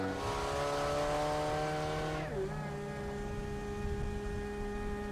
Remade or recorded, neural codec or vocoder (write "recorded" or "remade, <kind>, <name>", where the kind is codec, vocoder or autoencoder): recorded